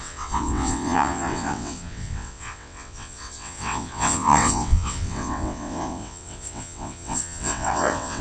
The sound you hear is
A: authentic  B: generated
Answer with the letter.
B